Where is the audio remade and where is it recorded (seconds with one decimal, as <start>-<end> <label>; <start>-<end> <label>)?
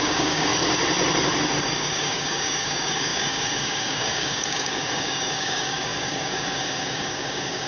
0.0-0.5 remade; 0.5-1.6 recorded; 1.6-7.7 remade